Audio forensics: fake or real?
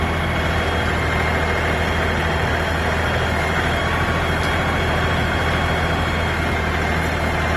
real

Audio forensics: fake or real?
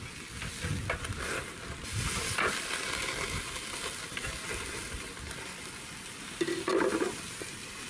real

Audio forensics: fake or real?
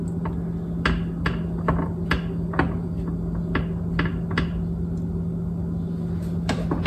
real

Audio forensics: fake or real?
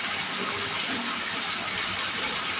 real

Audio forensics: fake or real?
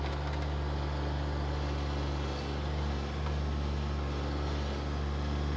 real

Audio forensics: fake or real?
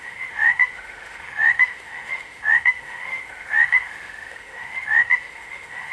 fake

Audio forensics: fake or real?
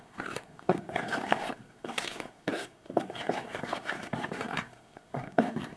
fake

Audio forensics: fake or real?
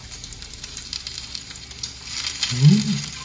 fake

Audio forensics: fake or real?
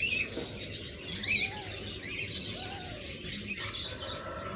real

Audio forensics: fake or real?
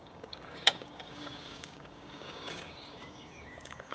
fake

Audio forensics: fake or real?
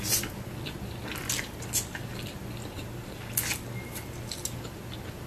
real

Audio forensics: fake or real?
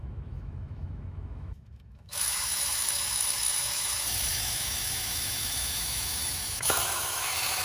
fake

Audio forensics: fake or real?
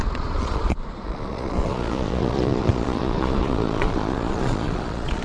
fake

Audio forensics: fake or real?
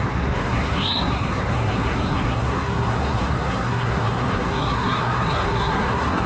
fake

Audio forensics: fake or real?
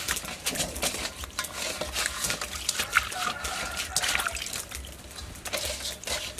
real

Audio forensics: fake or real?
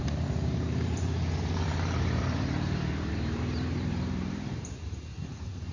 fake